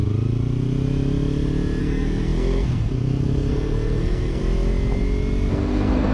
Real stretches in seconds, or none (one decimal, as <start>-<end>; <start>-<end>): 0.0-1.8; 4.4-5.5